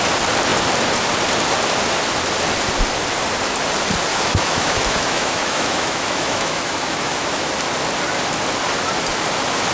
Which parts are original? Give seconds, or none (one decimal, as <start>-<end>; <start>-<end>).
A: 0.0-4.1; 7.5-9.7